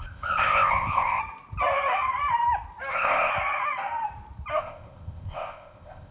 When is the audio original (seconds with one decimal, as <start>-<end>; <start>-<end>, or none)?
1.2-2.9; 3.3-4.6